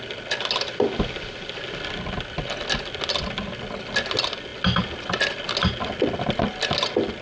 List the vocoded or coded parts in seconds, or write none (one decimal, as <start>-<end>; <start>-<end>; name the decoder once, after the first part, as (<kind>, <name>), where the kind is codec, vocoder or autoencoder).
none